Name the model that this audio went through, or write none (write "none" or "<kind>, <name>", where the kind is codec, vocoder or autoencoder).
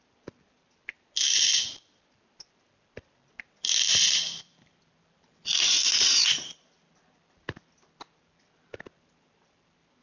none